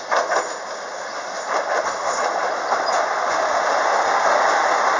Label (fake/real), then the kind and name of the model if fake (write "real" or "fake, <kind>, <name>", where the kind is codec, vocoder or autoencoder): real